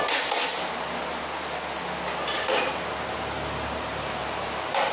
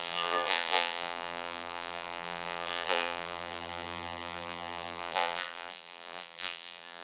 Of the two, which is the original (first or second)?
first